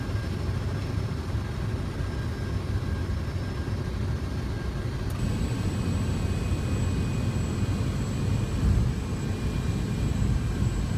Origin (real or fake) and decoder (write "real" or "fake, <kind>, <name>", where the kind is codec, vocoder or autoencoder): real